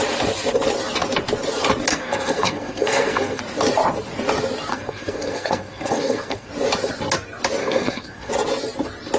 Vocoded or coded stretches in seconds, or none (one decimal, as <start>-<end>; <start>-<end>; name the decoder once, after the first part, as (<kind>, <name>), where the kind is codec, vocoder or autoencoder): 1.9-3.4 (codec, SNAC); 4.7-6.5; 7.6-8.3